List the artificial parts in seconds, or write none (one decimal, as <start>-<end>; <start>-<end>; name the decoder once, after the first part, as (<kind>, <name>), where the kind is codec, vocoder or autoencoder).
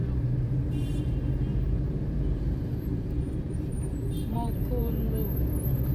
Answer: 0.0-0.9 (vocoder, BigVGAN v2); 1.5-5.0